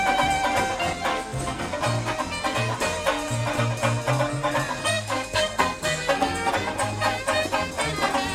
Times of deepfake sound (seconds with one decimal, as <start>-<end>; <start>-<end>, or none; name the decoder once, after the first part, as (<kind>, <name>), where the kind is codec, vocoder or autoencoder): 1.1-1.8 (codec, SNAC); 4.8-6.5